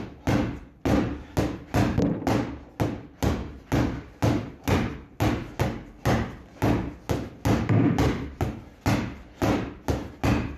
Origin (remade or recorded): recorded